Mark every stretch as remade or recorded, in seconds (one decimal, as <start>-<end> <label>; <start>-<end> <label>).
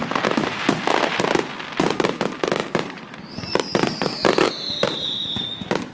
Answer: 0.0-0.6 remade; 0.6-2.6 recorded; 2.6-4.5 remade; 4.5-5.9 recorded